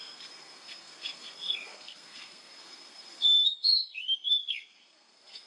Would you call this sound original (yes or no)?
no